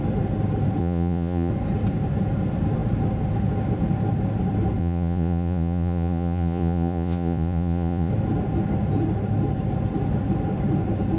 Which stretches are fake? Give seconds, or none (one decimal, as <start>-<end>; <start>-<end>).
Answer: 0.8-1.5; 4.8-8.1